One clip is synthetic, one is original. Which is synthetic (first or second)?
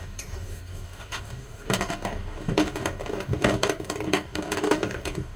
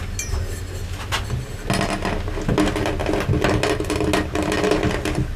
first